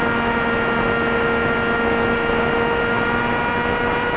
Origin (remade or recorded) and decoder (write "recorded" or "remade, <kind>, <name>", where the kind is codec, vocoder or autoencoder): recorded